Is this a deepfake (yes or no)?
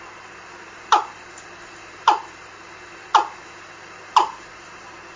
no